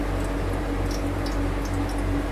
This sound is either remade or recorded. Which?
recorded